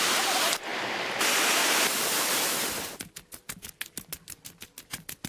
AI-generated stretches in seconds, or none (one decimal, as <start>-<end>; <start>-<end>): none